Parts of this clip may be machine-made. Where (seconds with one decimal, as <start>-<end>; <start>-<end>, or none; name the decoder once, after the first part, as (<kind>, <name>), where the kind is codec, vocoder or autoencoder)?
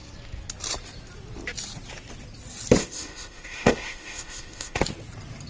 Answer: 2.8-4.8 (autoencoder, DAC-VAE)